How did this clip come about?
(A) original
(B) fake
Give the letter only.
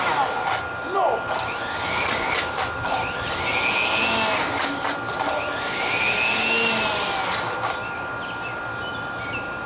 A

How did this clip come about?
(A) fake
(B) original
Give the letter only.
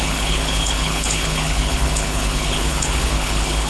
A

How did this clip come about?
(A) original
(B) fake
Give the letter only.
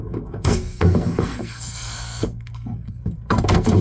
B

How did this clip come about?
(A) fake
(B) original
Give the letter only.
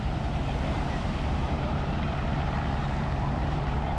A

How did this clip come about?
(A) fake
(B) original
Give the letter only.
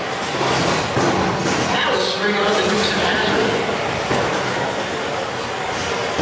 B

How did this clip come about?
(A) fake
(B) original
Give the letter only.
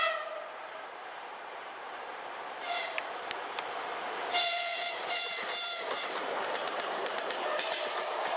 A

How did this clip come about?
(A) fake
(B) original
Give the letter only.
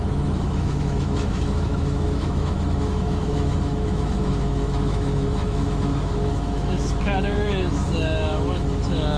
A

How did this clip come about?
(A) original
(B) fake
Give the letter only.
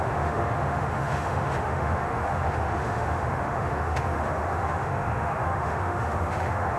B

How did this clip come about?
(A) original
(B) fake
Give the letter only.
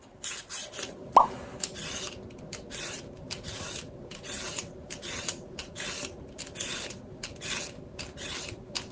A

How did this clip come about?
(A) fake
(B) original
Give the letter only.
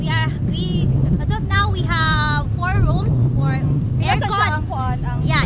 B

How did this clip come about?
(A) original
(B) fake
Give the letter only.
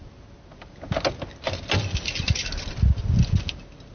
A